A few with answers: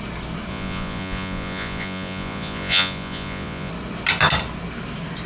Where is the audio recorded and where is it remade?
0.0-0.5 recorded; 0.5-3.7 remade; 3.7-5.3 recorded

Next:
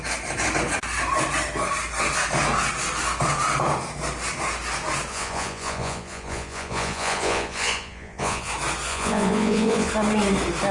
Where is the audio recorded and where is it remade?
0.0-5.1 recorded; 5.1-8.5 remade; 8.5-8.9 recorded; 8.9-9.9 remade; 9.9-10.7 recorded